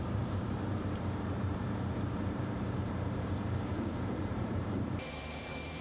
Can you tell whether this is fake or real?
fake